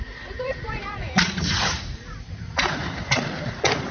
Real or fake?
fake